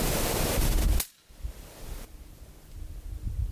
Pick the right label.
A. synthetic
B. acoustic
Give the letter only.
B